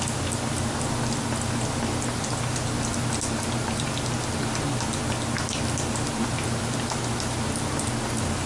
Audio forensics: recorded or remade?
recorded